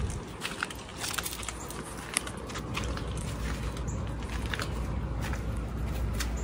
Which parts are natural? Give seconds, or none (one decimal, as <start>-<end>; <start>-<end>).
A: 0.0-6.4